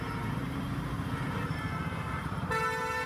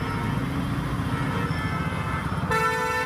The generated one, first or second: first